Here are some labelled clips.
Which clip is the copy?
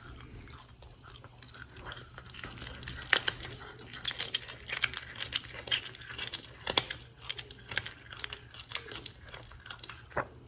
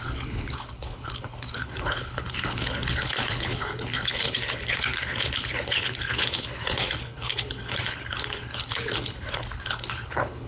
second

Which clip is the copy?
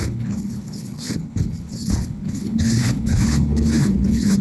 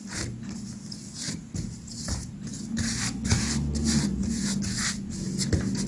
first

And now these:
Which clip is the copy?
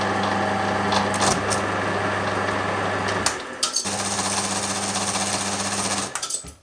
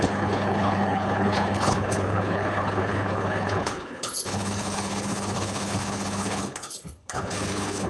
second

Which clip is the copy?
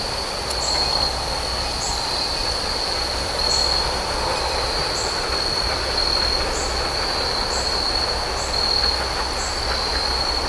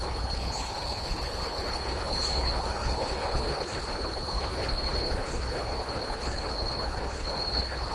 second